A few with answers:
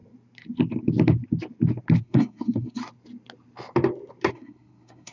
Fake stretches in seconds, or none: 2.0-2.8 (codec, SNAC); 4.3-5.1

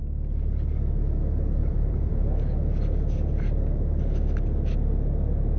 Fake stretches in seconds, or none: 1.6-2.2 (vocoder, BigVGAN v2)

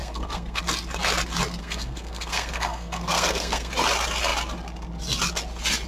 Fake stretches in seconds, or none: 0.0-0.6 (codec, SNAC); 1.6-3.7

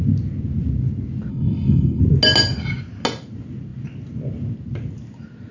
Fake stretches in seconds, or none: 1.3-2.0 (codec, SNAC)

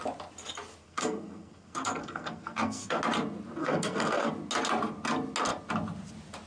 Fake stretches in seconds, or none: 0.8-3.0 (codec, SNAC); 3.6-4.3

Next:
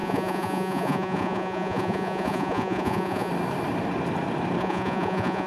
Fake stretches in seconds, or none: 0.0-3.3 (vocoder, Vocos); 4.6-5.5